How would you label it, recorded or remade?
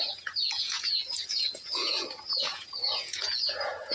remade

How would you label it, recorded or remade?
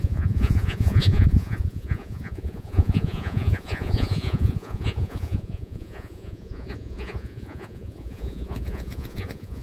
remade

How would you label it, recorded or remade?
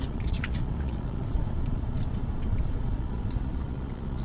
remade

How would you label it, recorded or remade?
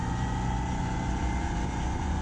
remade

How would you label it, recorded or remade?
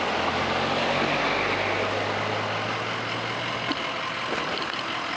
recorded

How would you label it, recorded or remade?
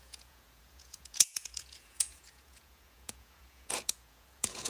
remade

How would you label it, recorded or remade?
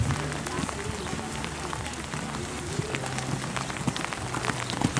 recorded